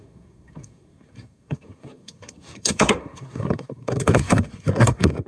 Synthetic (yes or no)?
yes